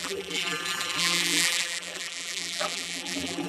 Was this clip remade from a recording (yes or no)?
yes